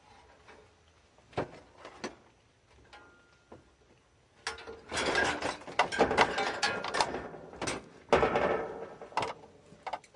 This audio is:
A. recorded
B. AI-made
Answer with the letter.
A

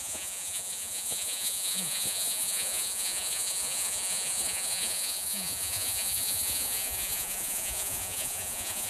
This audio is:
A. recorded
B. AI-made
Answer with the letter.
B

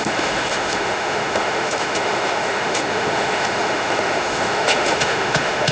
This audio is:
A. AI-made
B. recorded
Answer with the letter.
A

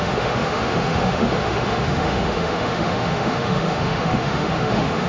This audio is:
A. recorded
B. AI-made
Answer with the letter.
B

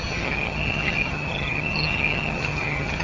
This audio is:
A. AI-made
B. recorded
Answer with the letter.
A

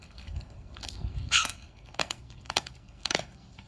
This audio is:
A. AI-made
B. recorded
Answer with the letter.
A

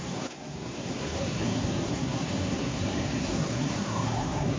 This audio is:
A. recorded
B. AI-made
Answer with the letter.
B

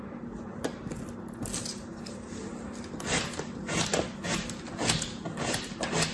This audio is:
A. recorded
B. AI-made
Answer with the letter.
A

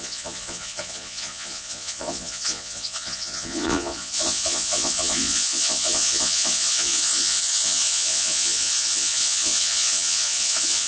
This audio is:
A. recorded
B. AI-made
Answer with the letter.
B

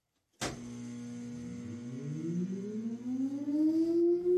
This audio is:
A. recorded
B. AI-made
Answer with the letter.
A